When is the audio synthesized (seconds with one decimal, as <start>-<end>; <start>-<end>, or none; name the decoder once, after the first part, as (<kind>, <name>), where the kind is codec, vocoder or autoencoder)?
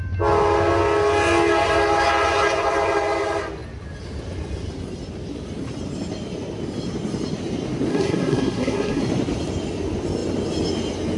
7.9-9.0 (codec, SNAC)